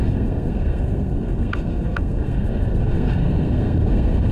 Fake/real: fake